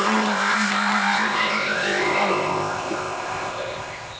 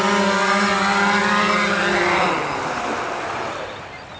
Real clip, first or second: second